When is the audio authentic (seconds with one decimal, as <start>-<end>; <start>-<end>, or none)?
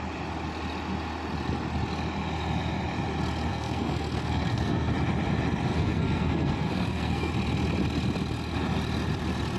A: 0.0-3.5; 4.9-5.7; 7.3-9.6